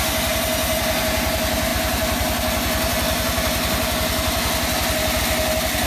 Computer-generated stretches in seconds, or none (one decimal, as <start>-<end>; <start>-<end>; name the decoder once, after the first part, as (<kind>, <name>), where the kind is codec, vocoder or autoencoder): none